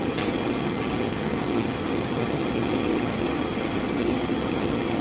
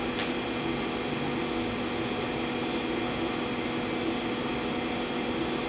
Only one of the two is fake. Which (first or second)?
first